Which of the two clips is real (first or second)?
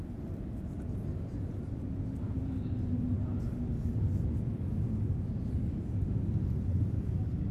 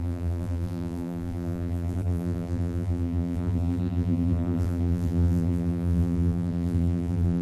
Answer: first